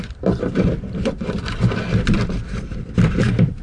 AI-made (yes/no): no